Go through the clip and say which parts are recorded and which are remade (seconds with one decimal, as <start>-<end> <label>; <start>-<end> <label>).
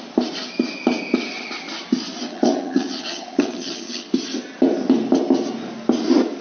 0.0-2.3 recorded; 2.3-4.1 remade; 4.1-6.4 recorded